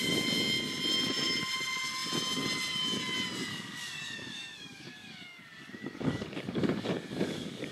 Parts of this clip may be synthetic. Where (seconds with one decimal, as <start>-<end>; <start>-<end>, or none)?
3.5-7.7